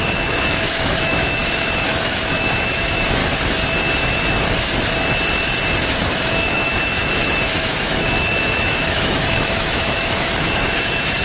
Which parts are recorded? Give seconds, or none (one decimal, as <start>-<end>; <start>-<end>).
3.2-5.9